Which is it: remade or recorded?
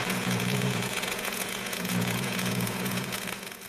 remade